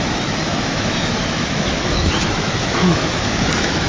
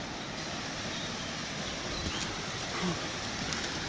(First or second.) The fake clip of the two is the first